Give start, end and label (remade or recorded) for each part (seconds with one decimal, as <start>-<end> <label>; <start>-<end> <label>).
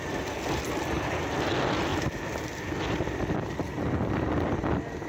0.0-5.1 recorded